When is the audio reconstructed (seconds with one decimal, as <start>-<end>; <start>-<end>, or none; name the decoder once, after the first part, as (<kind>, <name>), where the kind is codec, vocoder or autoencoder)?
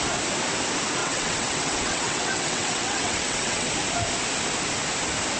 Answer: 1.0-3.7 (vocoder, WaveNeXt)